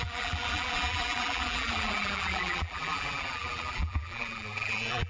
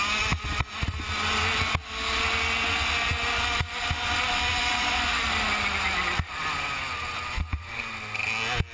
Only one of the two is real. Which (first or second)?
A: second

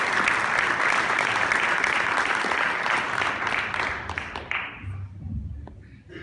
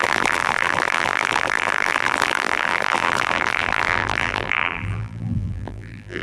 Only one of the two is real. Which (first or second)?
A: first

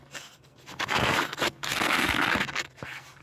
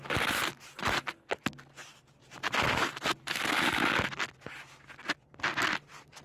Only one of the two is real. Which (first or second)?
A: second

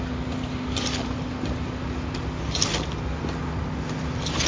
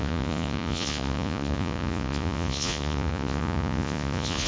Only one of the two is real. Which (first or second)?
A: first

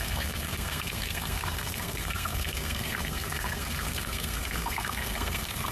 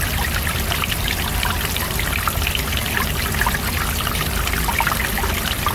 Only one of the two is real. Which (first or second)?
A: second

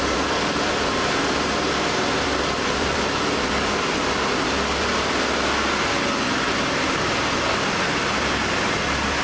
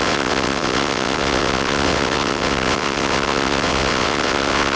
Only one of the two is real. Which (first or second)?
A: first